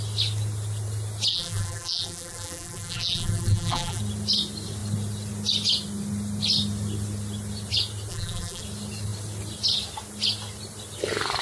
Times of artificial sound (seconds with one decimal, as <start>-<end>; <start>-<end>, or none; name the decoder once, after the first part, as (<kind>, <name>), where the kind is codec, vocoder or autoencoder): 1.3-4.0 (vocoder, BigVGAN v2); 8.1-8.6